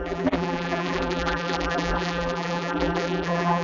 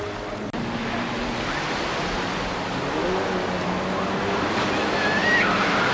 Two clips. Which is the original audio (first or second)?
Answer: second